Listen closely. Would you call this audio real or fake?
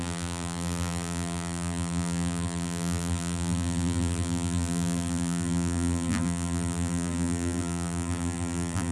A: fake